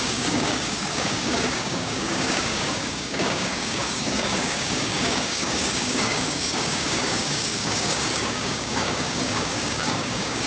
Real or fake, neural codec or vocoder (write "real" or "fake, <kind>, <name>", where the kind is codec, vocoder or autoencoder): fake, codec, DAC